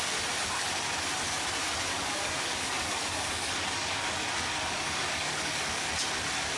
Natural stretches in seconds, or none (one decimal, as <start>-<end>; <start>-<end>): 0.0-1.9; 5.9-6.6